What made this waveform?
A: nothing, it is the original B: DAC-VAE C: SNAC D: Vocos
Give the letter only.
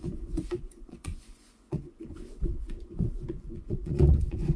D